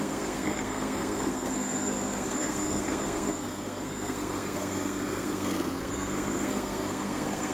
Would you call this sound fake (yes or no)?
yes